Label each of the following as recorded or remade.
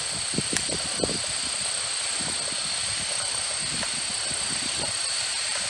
recorded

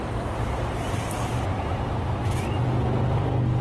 recorded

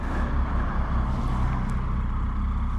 recorded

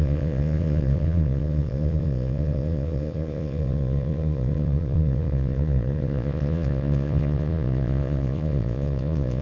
remade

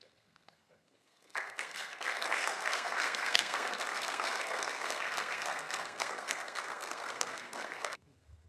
remade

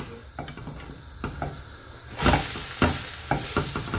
recorded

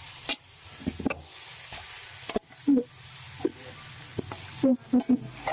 recorded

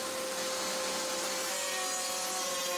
recorded